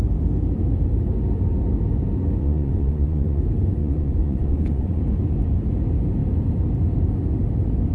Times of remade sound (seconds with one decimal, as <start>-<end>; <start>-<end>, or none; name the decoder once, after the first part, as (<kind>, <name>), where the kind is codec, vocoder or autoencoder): 2.4-3.4 (vocoder, Vocos); 3.8-5.0